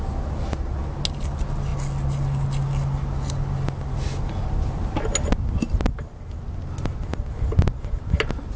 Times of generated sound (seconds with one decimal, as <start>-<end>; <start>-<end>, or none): none

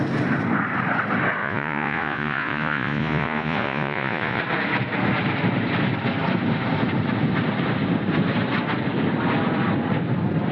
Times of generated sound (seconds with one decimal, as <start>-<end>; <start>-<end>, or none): 1.4-4.4

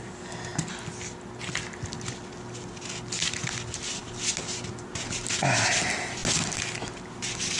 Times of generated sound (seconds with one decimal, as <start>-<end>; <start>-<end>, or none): none

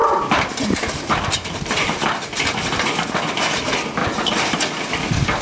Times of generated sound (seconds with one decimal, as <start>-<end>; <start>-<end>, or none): none